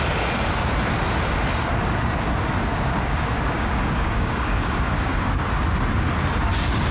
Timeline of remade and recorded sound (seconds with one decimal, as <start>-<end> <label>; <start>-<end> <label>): 0.0-2.7 recorded; 2.7-5.2 remade; 5.2-6.9 recorded